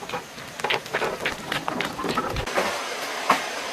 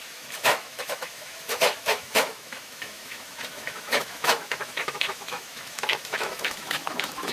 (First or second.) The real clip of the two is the first